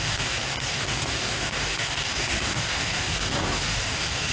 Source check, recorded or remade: remade